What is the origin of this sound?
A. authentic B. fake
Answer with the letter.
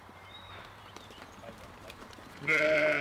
B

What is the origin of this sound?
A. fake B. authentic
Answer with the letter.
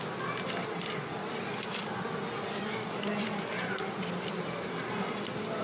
B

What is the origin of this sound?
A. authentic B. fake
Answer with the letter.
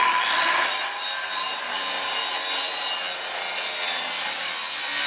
A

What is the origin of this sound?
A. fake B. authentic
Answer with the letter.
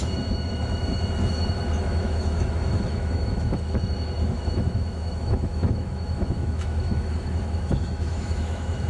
A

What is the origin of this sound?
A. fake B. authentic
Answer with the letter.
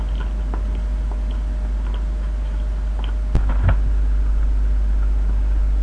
B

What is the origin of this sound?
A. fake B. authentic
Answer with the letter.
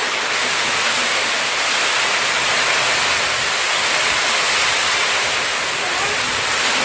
B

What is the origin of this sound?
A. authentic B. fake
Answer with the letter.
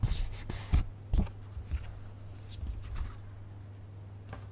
A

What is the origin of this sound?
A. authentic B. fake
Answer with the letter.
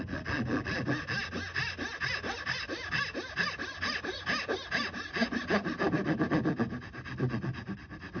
A